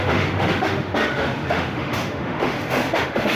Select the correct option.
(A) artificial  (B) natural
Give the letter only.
A